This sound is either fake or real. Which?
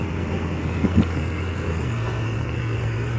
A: fake